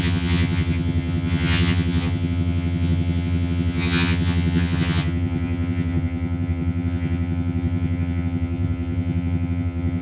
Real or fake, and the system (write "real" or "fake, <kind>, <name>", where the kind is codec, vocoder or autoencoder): fake, vocoder, HiFi-GAN